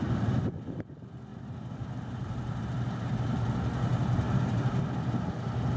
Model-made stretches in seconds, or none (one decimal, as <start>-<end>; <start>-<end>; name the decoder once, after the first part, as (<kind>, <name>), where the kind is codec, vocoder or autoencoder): 1.3-2.6 (vocoder, BigVGAN v2)